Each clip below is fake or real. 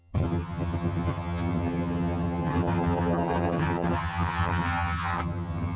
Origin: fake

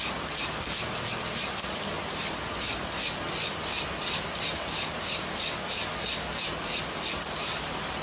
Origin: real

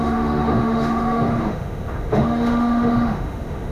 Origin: fake